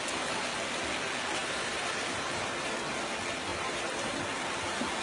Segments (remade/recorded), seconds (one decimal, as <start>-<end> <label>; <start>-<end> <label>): 0.0-1.4 recorded; 1.4-2.8 remade; 2.8-3.5 recorded; 3.5-4.2 remade; 4.2-5.0 recorded